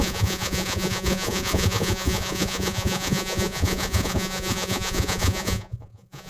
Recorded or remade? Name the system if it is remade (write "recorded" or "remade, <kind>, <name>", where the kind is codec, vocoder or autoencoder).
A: remade, vocoder, Vocos